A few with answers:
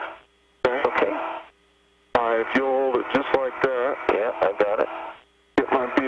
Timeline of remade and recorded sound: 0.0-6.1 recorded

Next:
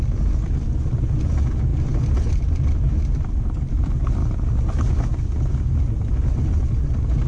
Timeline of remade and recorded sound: 0.0-7.3 recorded

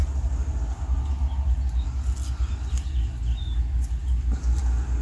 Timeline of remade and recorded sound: 0.0-5.0 recorded

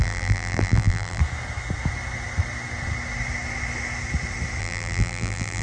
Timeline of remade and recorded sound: 0.0-1.2 remade; 1.2-4.6 recorded; 4.6-5.6 remade